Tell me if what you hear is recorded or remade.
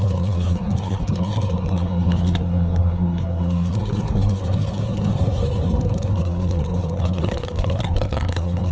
remade